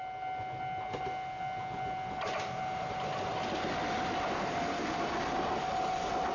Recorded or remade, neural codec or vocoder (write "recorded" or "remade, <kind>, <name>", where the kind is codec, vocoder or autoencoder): recorded